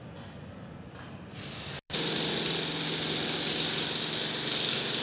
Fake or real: real